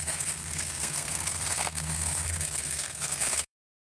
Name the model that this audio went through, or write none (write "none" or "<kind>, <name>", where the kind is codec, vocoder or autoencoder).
codec, SNAC